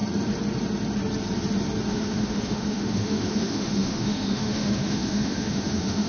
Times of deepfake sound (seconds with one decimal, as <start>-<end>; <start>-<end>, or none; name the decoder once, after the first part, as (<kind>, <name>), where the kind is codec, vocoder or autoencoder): 1.9-6.1 (autoencoder, DAC-VAE)